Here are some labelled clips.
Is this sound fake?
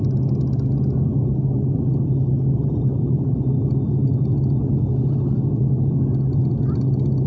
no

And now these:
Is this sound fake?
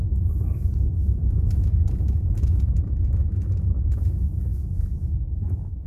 yes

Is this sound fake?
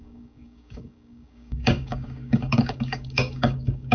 yes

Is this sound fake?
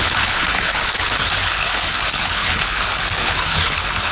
yes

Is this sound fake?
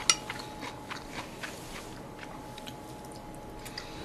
no